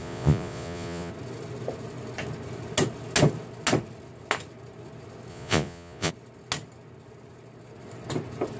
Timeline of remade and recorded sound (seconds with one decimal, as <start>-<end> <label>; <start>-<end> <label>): 0.0-1.1 remade; 1.1-5.3 recorded; 5.3-6.1 remade; 6.1-8.6 recorded